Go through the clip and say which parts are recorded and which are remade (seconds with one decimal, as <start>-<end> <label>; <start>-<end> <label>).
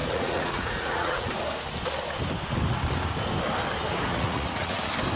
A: 0.0-1.3 remade; 1.3-4.1 recorded; 4.1-4.8 remade; 4.8-5.2 recorded